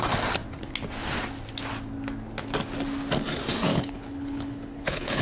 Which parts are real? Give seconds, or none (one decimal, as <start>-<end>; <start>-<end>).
0.0-3.7